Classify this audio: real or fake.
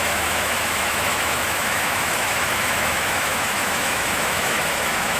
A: fake